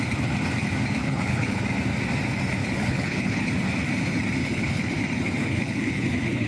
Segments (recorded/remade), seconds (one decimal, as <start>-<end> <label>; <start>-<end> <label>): 0.0-1.0 recorded; 1.0-1.6 remade; 1.6-2.6 recorded; 2.6-3.5 remade; 3.5-4.4 recorded; 4.4-4.9 remade; 4.9-5.4 recorded; 5.4-6.5 remade